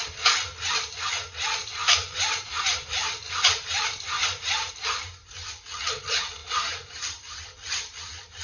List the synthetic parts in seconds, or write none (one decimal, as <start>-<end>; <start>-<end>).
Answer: 1.8-4.7; 6.4-7.3